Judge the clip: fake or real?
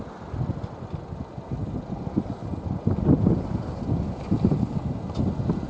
real